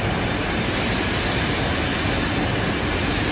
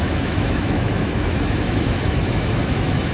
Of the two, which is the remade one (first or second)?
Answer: second